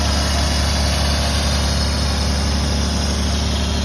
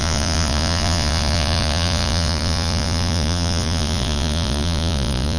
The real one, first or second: first